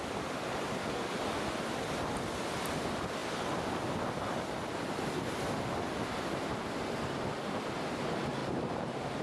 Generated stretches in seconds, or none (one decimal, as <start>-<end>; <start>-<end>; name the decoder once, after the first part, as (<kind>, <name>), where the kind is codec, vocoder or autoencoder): 8.4-9.2 (vocoder, BigVGAN v2)

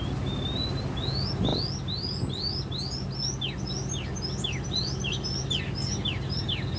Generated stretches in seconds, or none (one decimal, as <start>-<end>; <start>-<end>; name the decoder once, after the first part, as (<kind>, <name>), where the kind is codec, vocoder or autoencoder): none

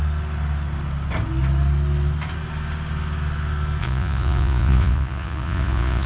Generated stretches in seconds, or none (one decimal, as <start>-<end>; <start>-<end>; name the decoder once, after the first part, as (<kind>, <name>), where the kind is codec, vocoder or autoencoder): 3.8-6.1 (vocoder, Vocos)

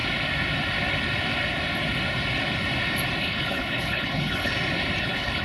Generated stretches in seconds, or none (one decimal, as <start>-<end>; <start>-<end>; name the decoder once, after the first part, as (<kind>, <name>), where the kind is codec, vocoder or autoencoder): 3.2-4.5 (codec, HILCodec); 5.0-5.4